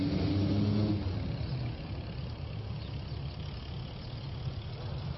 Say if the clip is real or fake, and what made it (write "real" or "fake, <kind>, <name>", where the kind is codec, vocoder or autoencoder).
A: real